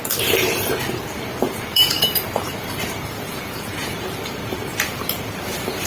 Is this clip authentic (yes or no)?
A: no